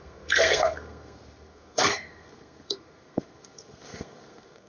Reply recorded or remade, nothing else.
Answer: remade